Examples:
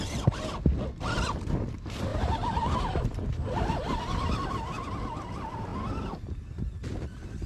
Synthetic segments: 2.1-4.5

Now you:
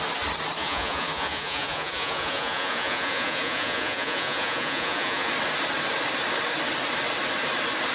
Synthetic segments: 0.6-5.3

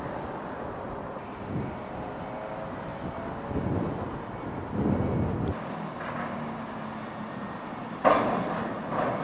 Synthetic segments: none

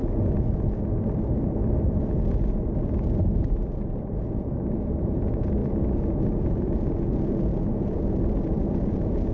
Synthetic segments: 5.0-7.5; 8.7-9.3